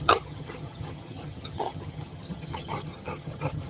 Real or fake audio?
fake